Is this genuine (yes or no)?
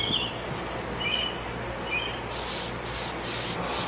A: yes